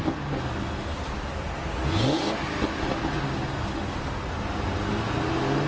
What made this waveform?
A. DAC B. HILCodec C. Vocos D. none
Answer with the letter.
D